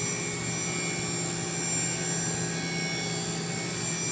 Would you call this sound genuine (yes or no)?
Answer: yes